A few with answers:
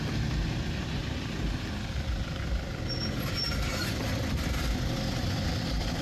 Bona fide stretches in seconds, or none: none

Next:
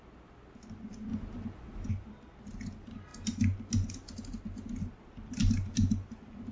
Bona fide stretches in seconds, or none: 0.0-6.5

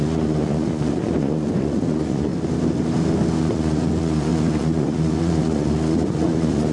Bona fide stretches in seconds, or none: 2.3-3.4

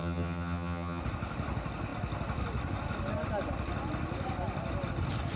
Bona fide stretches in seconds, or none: 1.0-5.4

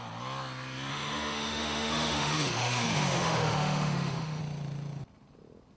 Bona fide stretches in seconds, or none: 0.0-0.9; 4.4-5.8

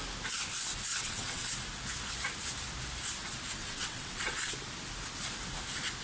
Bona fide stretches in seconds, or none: 0.0-0.9; 1.5-3.6; 4.5-6.0